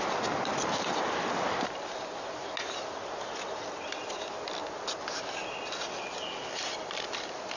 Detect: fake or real real